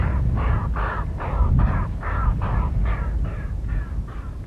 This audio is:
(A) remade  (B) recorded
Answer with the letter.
B